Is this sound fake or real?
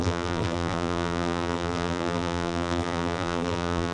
fake